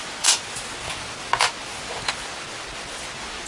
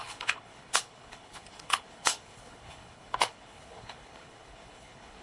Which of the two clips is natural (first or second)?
first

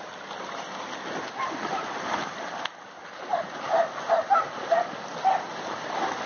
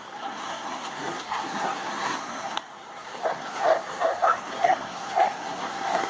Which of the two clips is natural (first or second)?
first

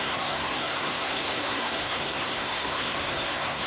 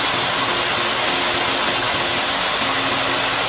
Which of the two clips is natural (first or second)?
second